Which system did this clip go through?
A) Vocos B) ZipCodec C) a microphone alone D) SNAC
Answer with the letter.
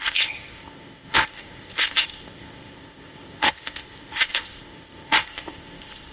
B